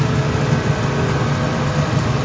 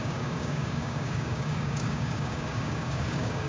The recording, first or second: first